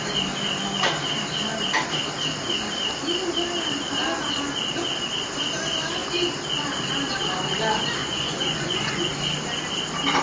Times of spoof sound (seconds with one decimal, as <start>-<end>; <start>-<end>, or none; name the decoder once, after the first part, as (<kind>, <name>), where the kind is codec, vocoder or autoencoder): 8.0-9.1 (vocoder, Vocos)